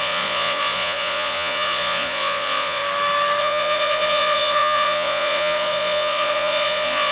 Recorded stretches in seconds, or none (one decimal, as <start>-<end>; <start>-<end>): 2.8-3.4